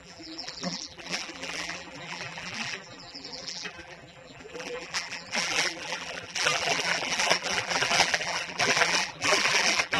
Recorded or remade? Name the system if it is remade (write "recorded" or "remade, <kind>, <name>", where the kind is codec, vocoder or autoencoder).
remade, vocoder, BigVGAN v2